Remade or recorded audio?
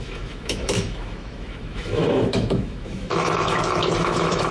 remade